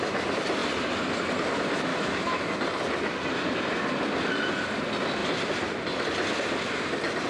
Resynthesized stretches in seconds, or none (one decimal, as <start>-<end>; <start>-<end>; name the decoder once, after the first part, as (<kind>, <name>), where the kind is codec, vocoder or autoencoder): 1.9-2.5 (autoencoder, DAC-VAE)